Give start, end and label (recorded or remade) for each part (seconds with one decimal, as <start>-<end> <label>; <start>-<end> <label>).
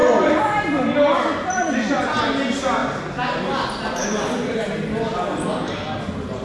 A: 0.0-6.4 recorded